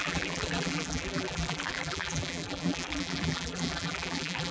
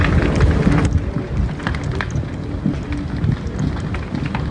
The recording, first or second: second